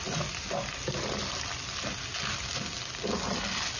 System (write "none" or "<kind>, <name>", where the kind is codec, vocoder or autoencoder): none